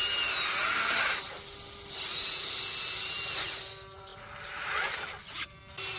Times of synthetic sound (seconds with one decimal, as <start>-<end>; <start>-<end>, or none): none